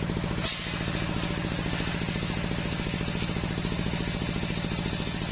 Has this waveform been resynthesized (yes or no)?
no